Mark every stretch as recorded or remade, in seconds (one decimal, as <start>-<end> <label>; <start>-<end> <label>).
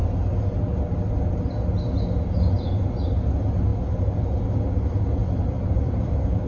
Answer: 0.0-5.2 recorded; 5.2-6.1 remade; 6.1-6.5 recorded